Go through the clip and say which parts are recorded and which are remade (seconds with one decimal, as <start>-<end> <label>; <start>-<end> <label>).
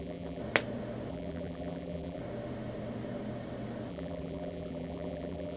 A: 0.0-0.4 remade; 0.4-1.1 recorded; 1.1-2.2 remade; 2.2-3.9 recorded; 3.9-5.6 remade